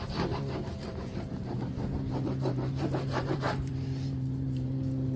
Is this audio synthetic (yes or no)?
yes